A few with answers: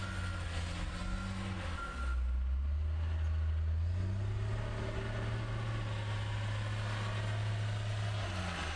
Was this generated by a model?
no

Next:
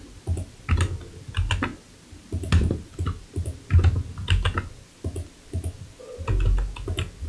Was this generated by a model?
no